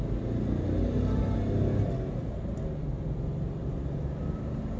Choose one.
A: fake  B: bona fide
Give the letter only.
B